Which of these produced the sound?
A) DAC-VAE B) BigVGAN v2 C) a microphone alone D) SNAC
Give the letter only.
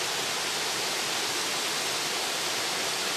C